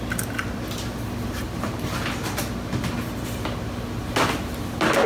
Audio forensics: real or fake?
real